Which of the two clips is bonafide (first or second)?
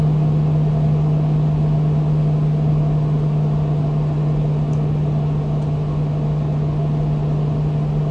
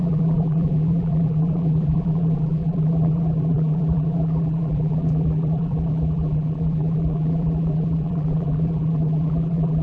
first